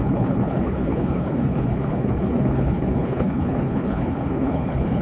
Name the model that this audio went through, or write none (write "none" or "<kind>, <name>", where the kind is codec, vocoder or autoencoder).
codec, HILCodec